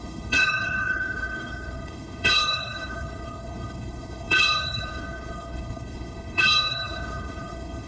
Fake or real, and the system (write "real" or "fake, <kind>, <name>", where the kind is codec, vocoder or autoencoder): fake, codec, HILCodec